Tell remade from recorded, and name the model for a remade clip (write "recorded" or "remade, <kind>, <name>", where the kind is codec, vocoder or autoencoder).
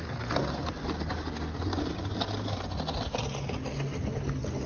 recorded